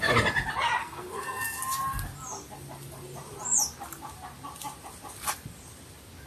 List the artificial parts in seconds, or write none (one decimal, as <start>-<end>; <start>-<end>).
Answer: 0.8-1.6